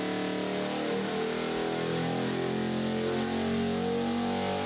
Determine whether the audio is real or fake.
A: real